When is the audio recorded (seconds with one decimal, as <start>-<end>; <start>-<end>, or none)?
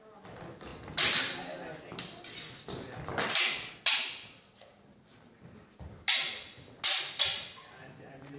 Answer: 0.0-8.4